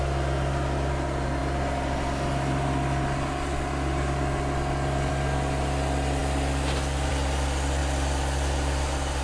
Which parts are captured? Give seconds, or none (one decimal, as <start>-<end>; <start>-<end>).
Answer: 0.0-9.2